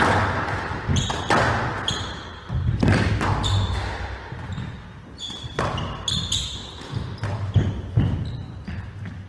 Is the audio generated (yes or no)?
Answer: no